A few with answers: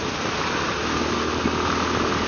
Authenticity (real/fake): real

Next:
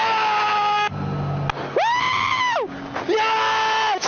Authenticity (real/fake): real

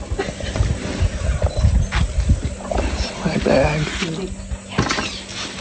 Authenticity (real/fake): real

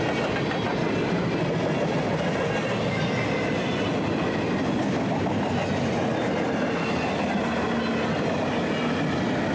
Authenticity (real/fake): real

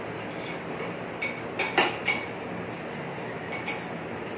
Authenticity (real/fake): real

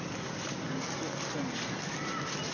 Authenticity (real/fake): real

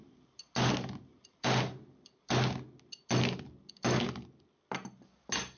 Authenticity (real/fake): real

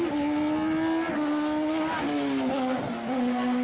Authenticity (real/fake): real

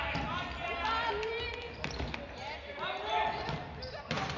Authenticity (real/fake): real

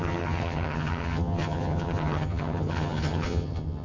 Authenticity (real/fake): fake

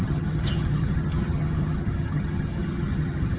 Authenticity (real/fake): fake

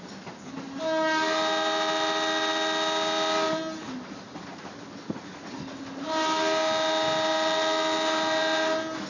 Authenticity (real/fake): real